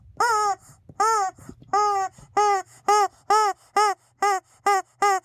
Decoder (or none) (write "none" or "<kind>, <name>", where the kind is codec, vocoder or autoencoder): none